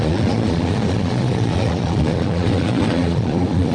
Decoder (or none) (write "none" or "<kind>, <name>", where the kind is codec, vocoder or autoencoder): vocoder, Vocos